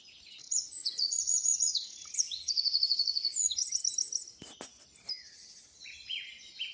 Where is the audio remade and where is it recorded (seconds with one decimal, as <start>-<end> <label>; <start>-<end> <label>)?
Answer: 0.0-0.4 recorded; 0.4-3.8 remade; 3.8-5.2 recorded; 5.2-6.2 remade; 6.2-6.7 recorded